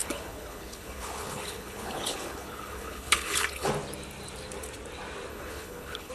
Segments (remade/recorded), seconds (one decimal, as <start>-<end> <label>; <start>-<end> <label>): 0.0-3.7 remade; 3.7-5.3 recorded; 5.3-6.1 remade